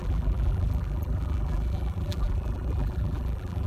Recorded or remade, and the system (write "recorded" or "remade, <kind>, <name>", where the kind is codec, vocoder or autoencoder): remade, vocoder, BigVGAN v2